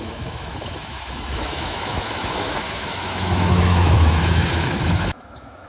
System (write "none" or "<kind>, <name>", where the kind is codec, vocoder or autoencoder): autoencoder, DAC-VAE